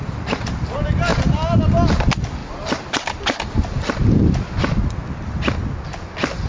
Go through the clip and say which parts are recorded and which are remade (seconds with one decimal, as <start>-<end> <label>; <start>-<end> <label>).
0.0-6.5 recorded